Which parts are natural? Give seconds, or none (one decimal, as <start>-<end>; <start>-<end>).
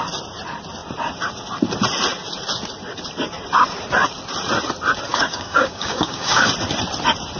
0.0-5.1; 6.5-7.4